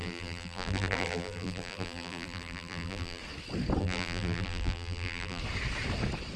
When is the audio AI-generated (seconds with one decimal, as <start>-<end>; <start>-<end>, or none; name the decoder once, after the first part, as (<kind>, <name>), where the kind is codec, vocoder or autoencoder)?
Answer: 0.0-3.2 (vocoder, BigVGAN v2); 3.8-5.4